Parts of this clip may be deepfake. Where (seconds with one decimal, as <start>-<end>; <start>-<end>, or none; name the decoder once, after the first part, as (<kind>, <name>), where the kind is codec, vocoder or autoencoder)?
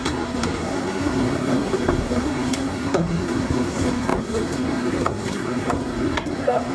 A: 0.0-6.7 (codec, SNAC)